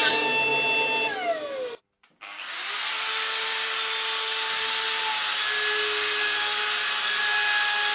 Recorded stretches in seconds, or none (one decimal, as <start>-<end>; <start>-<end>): 0.0-7.9